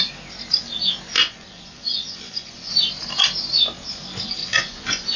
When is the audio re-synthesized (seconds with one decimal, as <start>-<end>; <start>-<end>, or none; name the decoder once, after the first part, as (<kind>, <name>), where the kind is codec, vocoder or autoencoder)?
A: 1.2-2.7 (vocoder, Vocos); 4.4-5.2

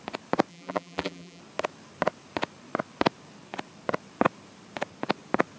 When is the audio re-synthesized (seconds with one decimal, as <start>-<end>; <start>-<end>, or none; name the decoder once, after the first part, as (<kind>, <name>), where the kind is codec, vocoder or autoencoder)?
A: 0.5-1.4 (vocoder, BigVGAN v2)

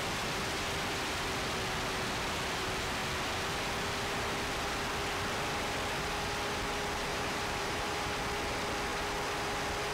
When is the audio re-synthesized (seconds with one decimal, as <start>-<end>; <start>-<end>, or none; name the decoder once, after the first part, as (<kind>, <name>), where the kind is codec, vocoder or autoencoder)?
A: 7.1-8.1 (vocoder, BigVGAN v2)

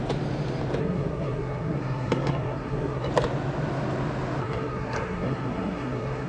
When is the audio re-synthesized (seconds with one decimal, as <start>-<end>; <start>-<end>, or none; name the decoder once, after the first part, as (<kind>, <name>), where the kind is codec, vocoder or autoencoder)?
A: 0.8-3.1 (codec, SNAC); 4.4-6.3